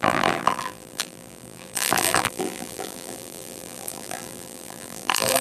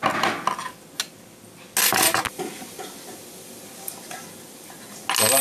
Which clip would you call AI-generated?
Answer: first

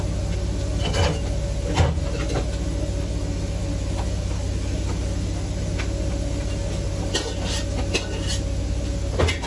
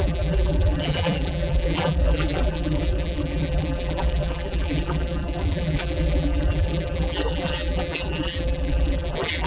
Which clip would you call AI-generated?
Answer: second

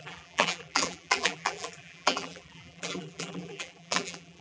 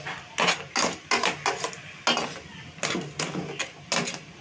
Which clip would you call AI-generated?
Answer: first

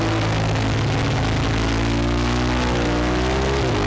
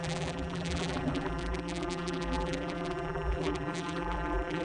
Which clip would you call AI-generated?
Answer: second